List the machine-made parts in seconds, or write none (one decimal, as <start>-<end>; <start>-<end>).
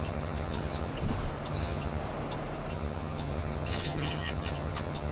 0.0-0.9; 1.5-2.0; 2.7-5.1